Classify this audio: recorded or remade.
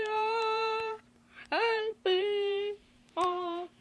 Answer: remade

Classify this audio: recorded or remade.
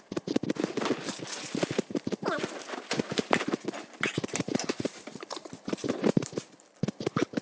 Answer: remade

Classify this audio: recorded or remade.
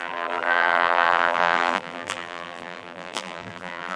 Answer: remade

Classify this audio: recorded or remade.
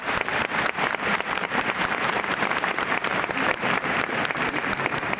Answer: remade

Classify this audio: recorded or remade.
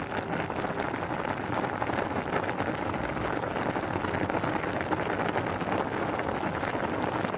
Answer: recorded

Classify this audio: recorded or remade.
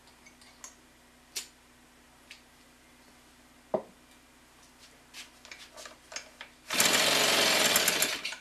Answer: recorded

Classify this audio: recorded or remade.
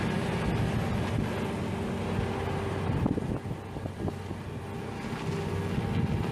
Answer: recorded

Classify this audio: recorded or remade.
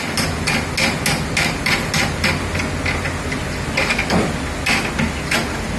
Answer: recorded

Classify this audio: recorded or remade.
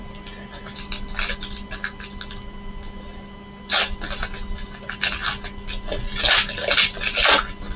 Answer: recorded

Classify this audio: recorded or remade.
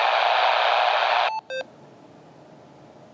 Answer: recorded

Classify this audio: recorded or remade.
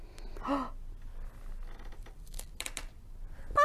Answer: recorded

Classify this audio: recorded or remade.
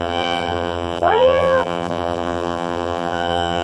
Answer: remade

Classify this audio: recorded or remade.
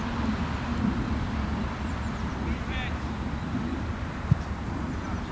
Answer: remade